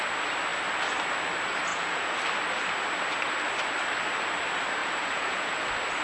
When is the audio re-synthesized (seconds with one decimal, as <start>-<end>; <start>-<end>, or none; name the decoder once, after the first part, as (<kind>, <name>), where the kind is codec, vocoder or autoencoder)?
1.7-2.2 (vocoder, Vocos); 4.8-5.6